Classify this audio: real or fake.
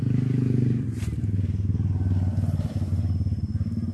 real